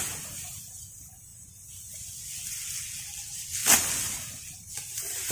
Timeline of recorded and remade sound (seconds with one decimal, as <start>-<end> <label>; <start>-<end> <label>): 0.0-5.3 recorded